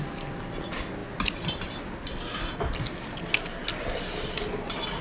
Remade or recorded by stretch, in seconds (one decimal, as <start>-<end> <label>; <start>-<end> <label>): 0.0-5.0 recorded